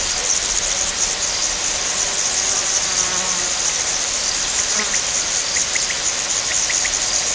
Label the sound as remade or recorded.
recorded